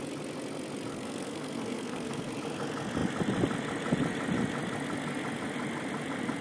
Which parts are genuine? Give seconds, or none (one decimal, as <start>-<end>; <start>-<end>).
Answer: 0.0-0.9; 2.3-6.4